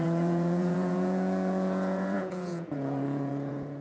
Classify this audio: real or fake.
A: fake